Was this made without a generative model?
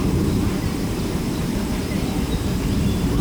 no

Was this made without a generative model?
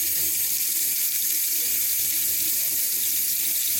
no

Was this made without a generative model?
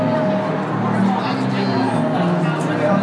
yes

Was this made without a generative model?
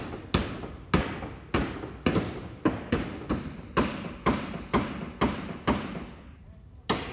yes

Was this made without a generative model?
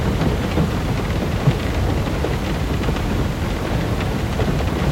no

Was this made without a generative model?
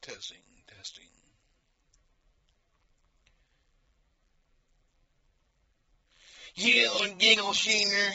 no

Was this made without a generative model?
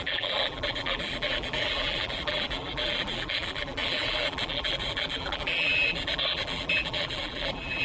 no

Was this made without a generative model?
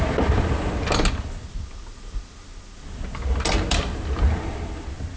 yes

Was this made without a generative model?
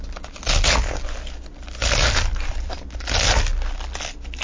yes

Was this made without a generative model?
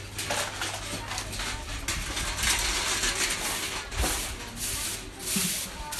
yes